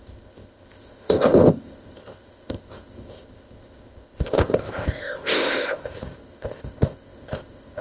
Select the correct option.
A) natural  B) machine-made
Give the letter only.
B